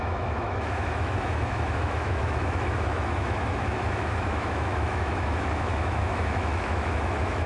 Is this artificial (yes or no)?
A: yes